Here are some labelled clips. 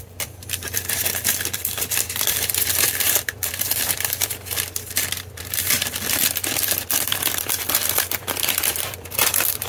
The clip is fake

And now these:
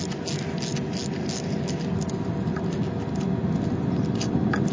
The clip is real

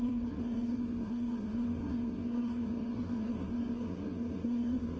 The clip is fake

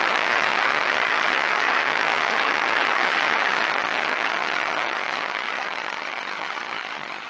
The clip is fake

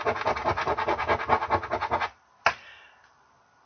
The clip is real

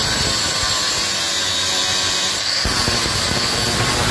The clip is real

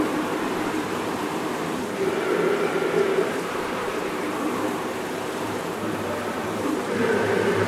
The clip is fake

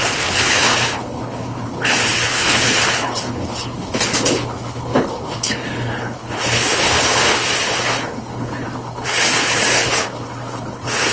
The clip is fake